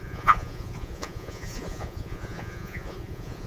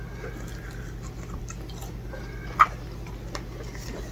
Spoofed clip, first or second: first